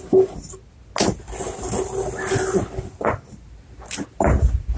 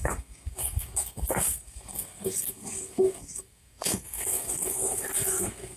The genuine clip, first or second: first